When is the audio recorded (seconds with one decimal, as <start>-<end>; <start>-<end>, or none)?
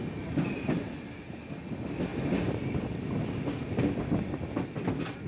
0.0-5.3